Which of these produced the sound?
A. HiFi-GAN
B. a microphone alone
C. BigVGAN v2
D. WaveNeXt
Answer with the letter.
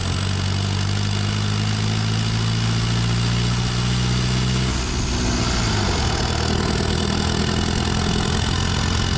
B